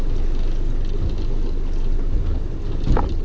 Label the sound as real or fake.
real